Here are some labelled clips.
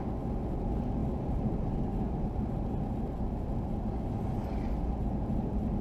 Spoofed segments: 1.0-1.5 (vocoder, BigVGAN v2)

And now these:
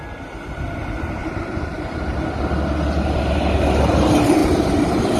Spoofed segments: none

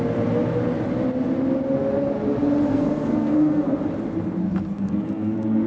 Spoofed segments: 2.7-3.8 (codec, SNAC); 4.4-5.7

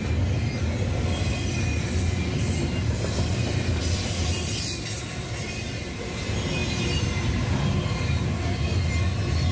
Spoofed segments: none

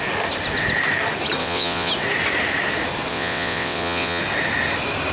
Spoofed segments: 1.4-1.9 (vocoder, WaveNeXt); 3.1-4.2

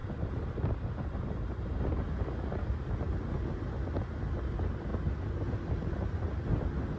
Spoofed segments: none

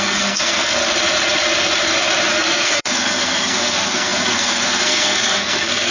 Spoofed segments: 0.0-0.8 (codec, SNAC); 2.3-5.9